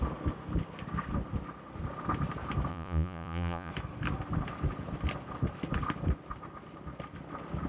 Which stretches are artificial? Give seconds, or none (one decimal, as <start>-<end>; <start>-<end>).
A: 2.7-3.7